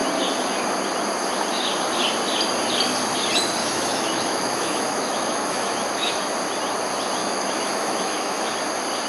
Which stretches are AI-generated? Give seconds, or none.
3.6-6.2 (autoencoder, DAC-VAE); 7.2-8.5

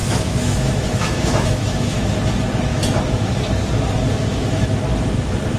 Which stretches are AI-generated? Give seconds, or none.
0.0-2.1 (autoencoder, DAC-VAE); 2.7-3.3; 4.2-4.8